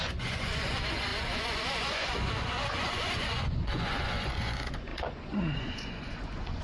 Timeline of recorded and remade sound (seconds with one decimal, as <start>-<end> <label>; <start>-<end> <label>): 0.0-6.6 remade